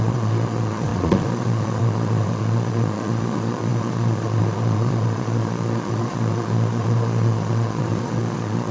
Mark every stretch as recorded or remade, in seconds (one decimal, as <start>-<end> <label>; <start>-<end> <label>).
0.0-8.7 remade